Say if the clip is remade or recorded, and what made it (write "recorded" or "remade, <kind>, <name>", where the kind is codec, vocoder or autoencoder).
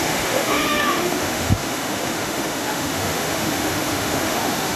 remade, autoencoder, DAC-VAE